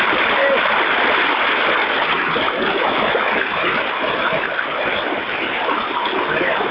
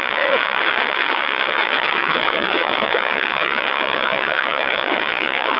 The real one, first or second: first